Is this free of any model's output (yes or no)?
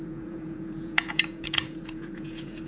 no